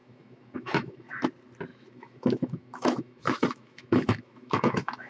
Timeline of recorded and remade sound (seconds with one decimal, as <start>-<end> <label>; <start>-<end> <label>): 0.0-1.2 remade; 1.2-1.7 recorded; 1.7-5.1 remade